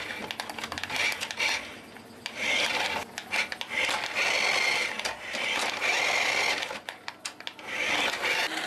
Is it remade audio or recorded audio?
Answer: recorded